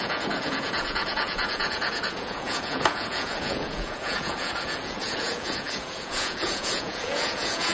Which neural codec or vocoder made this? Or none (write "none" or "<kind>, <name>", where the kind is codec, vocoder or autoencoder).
vocoder, Vocos